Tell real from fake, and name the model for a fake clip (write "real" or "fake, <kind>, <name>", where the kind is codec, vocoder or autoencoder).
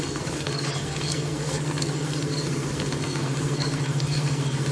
fake, codec, SNAC